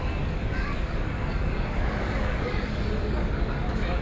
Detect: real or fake fake